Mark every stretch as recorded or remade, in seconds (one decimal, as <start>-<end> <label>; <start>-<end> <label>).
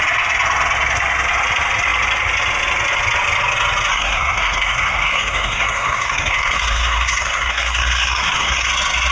0.0-3.9 recorded; 3.9-8.7 remade; 8.7-9.1 recorded